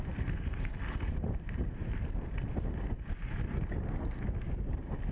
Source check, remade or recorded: recorded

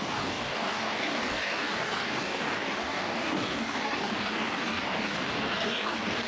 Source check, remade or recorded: remade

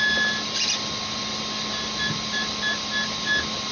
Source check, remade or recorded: recorded